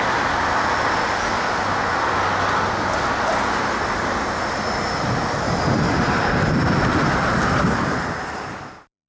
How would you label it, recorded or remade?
recorded